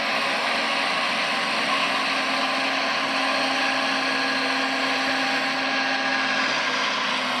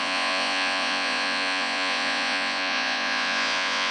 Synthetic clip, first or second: second